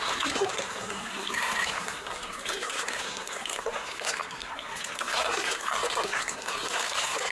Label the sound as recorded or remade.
remade